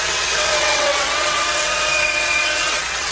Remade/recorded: remade